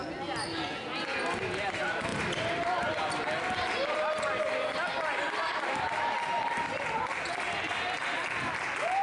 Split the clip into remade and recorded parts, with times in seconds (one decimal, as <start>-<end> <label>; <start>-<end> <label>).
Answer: 0.0-9.0 recorded